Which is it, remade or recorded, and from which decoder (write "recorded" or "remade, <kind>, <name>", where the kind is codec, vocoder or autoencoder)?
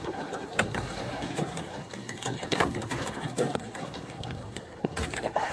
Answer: remade, codec, SNAC